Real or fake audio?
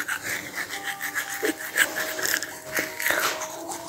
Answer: real